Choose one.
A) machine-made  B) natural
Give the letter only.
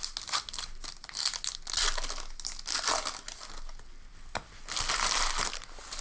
B